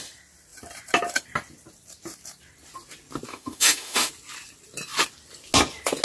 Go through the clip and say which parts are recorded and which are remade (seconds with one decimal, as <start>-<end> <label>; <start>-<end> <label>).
0.0-3.3 recorded; 3.3-4.1 remade; 4.1-6.0 recorded